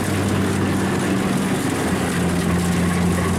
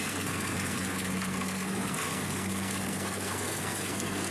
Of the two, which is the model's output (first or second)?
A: second